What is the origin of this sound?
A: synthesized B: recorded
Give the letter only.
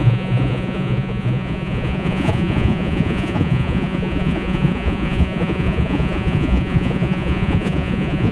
A